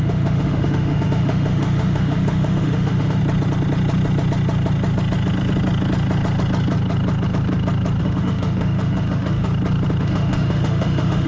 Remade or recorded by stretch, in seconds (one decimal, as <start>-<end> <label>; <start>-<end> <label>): 0.0-3.2 remade; 3.2-8.0 recorded; 8.0-9.5 remade; 9.5-10.0 recorded; 10.0-11.3 remade